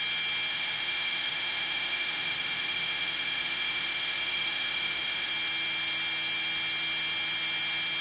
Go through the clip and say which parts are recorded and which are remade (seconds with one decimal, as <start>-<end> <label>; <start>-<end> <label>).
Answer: 0.0-0.5 recorded; 0.5-5.3 remade; 5.3-8.0 recorded